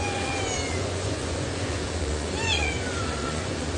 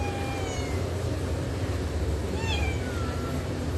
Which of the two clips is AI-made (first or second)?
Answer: first